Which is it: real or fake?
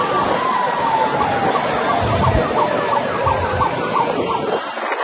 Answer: real